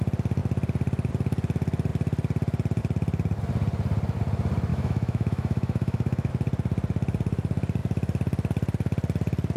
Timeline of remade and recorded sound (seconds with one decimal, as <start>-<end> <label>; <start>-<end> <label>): 0.0-4.7 recorded; 4.7-6.3 remade; 6.3-9.6 recorded